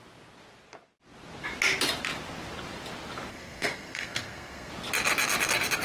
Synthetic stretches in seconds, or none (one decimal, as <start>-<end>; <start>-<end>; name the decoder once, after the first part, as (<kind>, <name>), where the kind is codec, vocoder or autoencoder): 3.3-4.7 (codec, SNAC)